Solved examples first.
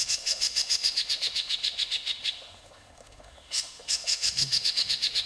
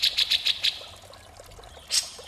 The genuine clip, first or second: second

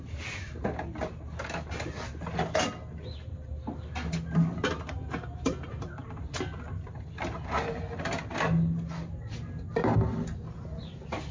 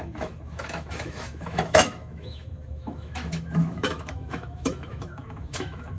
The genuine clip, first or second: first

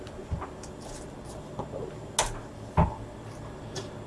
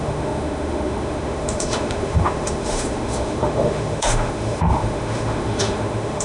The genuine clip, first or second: first